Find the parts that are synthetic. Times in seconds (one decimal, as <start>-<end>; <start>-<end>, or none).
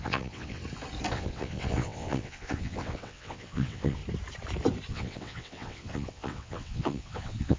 0.0-0.6; 1.1-4.0; 4.9-7.6